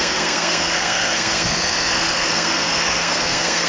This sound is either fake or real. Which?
fake